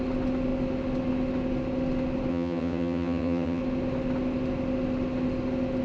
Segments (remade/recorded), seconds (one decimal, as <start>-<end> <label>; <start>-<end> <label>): 0.0-2.3 recorded; 2.3-3.6 remade; 3.6-5.8 recorded